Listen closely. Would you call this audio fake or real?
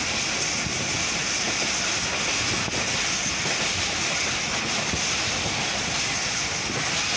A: real